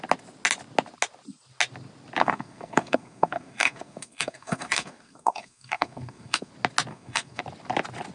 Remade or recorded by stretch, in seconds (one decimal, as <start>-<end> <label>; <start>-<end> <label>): 0.0-2.2 recorded; 2.2-6.5 remade; 6.5-6.9 recorded; 6.9-7.4 remade; 7.4-8.1 recorded

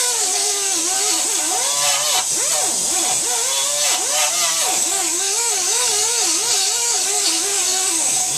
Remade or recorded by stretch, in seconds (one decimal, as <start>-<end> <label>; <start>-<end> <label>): 0.0-0.8 remade; 0.8-4.5 recorded; 4.5-8.4 remade

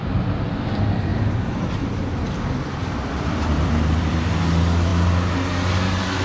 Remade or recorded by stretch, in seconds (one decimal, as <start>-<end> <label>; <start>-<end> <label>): 0.0-1.1 recorded; 1.1-1.7 remade; 1.7-2.8 recorded; 2.8-4.4 remade; 4.4-6.2 recorded

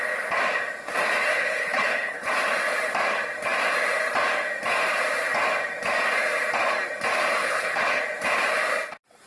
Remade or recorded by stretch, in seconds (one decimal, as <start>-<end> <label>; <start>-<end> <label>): 0.0-1.3 recorded; 1.3-2.3 remade; 2.3-7.4 recorded; 7.4-8.0 remade; 8.0-9.3 recorded

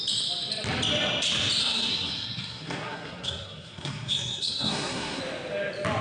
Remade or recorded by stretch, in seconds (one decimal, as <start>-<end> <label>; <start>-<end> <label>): 0.0-1.6 recorded; 1.6-5.2 remade; 5.2-6.0 recorded

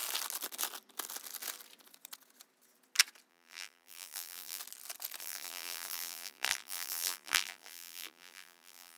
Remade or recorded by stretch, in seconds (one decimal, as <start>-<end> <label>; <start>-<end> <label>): 0.0-3.3 recorded; 3.3-4.6 remade; 4.6-5.2 recorded; 5.2-9.0 remade